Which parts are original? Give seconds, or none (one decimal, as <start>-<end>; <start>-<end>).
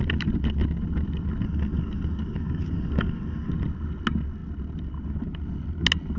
0.0-1.4; 3.5-6.2